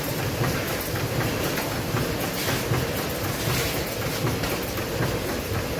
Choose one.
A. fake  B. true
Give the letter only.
B